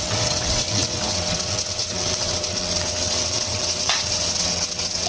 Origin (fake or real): fake